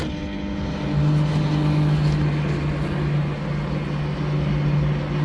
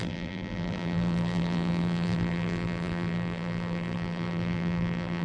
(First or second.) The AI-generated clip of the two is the second